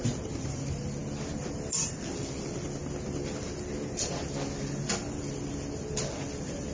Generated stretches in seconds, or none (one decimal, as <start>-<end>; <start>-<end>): none